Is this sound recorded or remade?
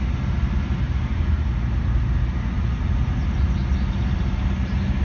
recorded